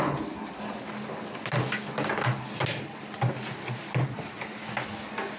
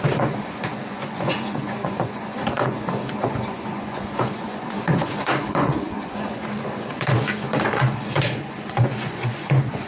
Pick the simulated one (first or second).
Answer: second